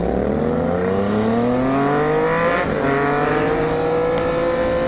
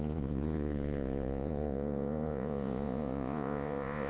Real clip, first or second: first